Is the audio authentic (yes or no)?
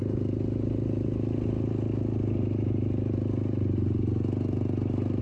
yes